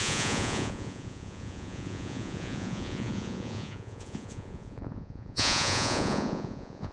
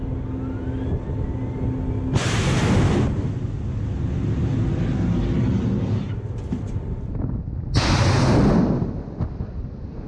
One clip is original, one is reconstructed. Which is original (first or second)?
second